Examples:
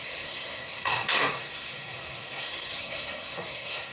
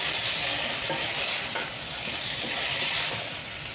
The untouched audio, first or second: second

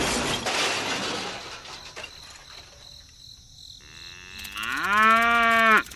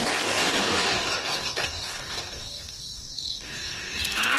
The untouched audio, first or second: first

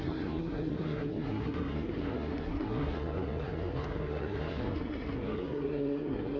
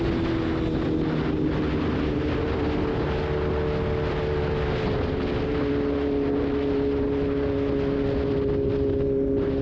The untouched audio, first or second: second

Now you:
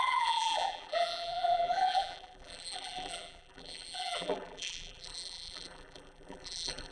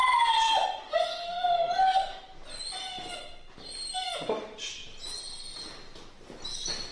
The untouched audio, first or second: second